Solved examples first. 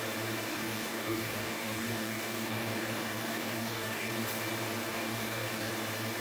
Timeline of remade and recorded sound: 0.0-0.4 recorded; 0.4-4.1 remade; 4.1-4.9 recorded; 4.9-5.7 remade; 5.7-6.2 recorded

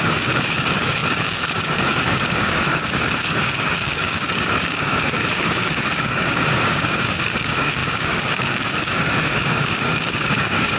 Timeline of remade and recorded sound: 0.0-10.8 remade